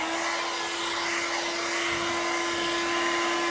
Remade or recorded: recorded